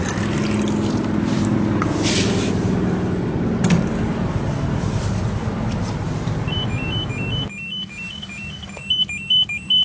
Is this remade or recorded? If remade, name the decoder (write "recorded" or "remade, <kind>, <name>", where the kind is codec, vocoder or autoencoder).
recorded